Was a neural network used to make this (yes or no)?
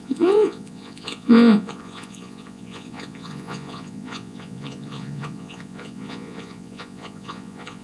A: yes